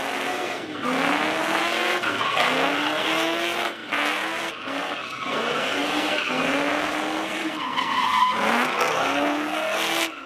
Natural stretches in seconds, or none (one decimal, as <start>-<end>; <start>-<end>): none